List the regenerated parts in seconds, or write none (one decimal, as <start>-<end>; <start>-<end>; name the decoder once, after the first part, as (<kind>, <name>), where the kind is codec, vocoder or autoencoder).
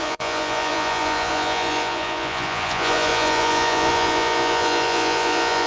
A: 0.0-5.7 (vocoder, Vocos)